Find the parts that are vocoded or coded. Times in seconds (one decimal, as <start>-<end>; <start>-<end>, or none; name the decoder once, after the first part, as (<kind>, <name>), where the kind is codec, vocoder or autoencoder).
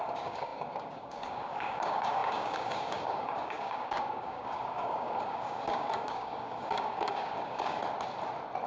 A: 0.0-7.8 (codec, DAC)